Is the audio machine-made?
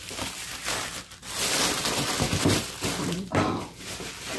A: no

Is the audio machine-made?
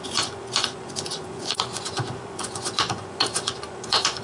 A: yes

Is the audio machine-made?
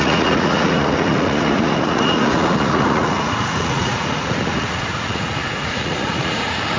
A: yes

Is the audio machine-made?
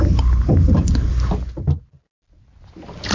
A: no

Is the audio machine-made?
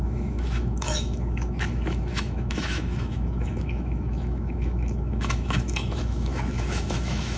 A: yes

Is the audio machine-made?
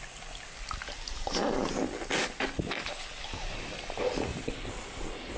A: no